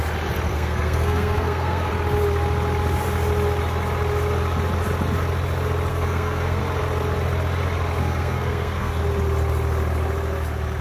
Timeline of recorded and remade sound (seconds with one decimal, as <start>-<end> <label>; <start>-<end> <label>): 0.0-0.5 recorded; 0.5-1.9 remade; 1.9-5.9 recorded; 5.9-6.6 remade; 6.6-8.0 recorded; 8.0-8.9 remade; 8.9-10.8 recorded